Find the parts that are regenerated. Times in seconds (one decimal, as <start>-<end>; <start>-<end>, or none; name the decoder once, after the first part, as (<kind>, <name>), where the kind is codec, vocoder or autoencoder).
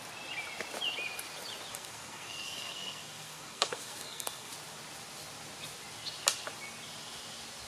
1.7-4.5 (codec, SNAC)